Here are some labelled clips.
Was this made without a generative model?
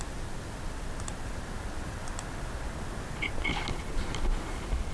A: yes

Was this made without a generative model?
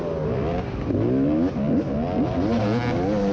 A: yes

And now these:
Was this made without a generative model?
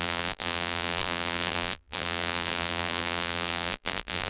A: no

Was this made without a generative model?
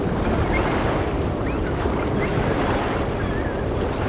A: yes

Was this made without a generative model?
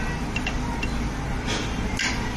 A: yes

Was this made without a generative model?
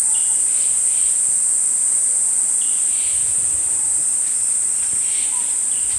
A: no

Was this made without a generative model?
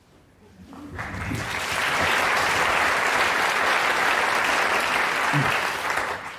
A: yes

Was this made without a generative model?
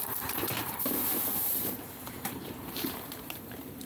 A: no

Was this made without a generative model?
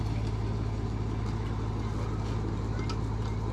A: yes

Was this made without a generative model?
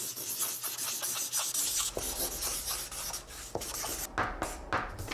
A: yes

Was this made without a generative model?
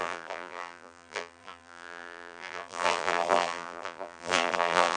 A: no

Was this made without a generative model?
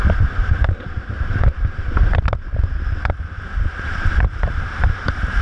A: no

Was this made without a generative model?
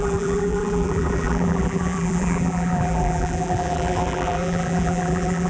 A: no